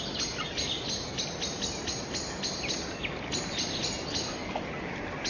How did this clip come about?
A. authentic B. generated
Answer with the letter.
A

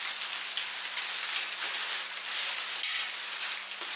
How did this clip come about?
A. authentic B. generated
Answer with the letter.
A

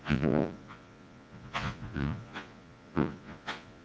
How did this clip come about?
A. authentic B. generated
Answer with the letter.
B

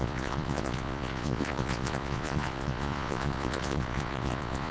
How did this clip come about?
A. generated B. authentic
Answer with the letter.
A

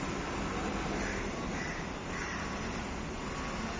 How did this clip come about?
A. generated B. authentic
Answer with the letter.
B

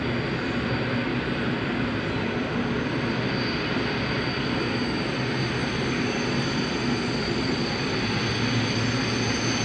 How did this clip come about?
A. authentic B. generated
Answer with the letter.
A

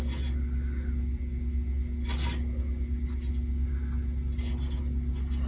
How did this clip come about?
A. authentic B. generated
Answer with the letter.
A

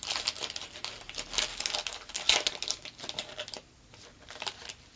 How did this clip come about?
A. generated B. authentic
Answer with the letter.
B